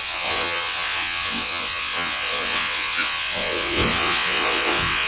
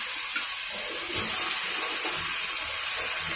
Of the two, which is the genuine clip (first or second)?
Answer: second